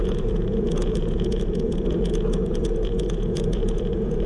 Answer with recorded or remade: remade